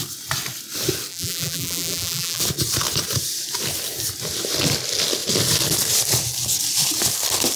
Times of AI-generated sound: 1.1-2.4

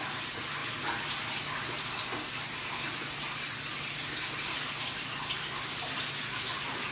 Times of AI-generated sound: none

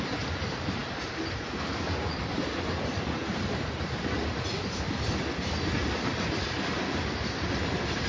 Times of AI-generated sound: none